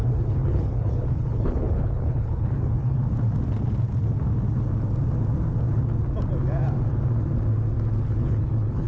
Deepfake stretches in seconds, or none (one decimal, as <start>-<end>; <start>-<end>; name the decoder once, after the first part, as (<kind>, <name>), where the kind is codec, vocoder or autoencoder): 0.0-3.0 (codec, HILCodec); 8.0-8.9